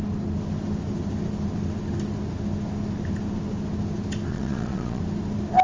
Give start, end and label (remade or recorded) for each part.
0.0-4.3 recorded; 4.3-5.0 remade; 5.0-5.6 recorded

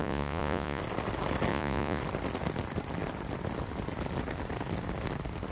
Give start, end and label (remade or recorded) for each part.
0.0-0.8 remade; 0.8-1.5 recorded; 1.5-2.0 remade; 2.0-5.5 recorded

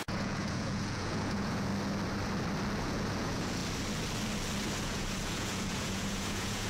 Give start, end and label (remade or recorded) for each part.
0.0-1.7 remade; 1.7-2.8 recorded; 2.8-3.6 remade; 3.6-4.8 recorded; 4.8-6.7 remade

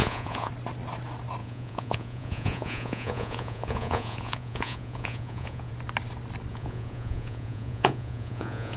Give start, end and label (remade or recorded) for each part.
0.0-0.5 remade; 0.5-1.4 recorded; 1.4-5.7 remade; 5.7-6.5 recorded; 6.5-8.8 remade